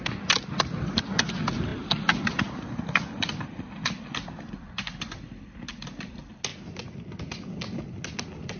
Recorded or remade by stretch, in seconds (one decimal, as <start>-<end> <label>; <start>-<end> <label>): 0.0-8.6 recorded